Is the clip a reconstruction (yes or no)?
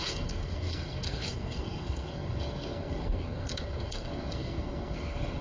yes